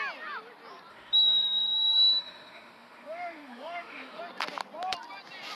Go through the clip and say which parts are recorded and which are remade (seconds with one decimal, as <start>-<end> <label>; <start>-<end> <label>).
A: 0.0-0.9 recorded; 0.9-4.2 remade; 4.2-5.5 recorded